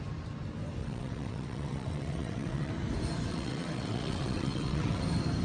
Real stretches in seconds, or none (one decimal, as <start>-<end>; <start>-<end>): 0.0-0.8; 2.7-3.3; 5.0-5.4